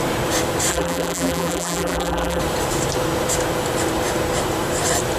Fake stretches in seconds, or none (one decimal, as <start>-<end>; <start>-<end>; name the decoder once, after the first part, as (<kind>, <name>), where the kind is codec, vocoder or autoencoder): 0.7-2.4 (vocoder, BigVGAN v2)